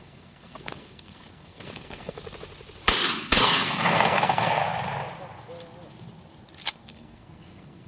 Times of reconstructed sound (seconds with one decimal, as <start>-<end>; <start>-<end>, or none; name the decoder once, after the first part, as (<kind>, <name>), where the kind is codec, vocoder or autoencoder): 0.0-2.2 (codec, SNAC); 3.2-4.6; 6.7-7.9